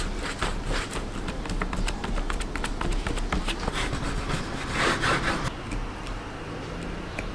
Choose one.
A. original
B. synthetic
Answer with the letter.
A